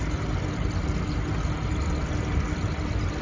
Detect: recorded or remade recorded